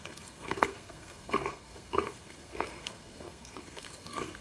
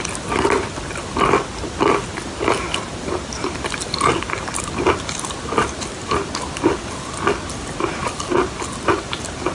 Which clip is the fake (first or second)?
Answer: first